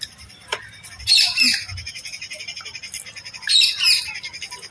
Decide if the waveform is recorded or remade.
recorded